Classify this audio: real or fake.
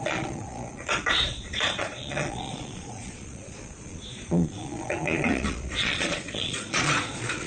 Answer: fake